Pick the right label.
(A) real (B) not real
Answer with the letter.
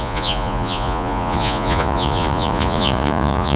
B